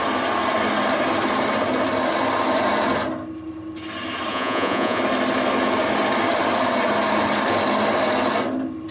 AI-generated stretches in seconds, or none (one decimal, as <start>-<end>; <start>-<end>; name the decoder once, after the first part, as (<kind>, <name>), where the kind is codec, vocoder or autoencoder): 4.3-5.0 (vocoder, Vocos)